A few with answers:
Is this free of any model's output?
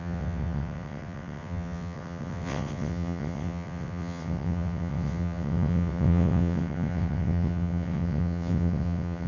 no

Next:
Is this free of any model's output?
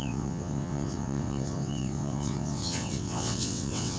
no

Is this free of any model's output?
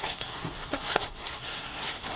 no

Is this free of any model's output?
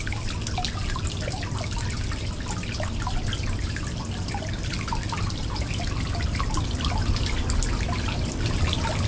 yes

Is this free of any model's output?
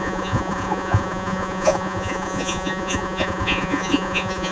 no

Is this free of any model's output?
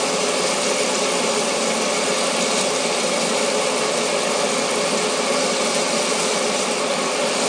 yes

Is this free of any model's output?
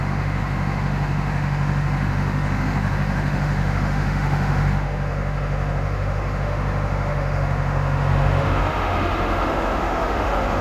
no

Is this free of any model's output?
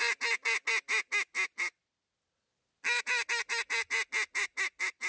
yes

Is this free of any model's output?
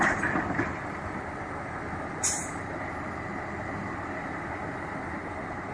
yes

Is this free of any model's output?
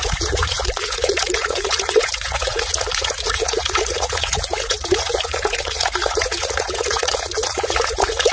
no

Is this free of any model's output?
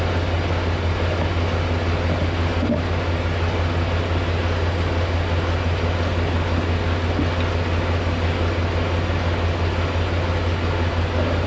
yes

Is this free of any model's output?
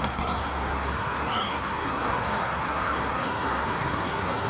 no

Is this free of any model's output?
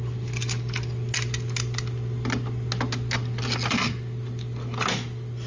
yes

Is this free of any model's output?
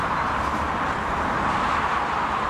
yes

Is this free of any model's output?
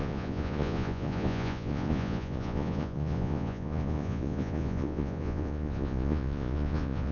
no